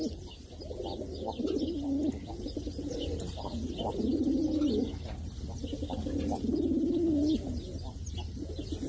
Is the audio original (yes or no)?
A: yes